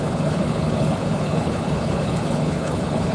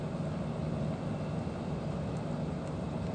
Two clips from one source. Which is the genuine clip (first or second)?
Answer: second